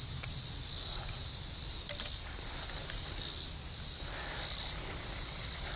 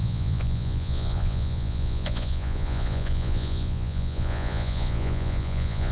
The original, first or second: first